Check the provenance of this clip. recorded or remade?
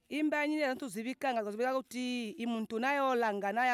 recorded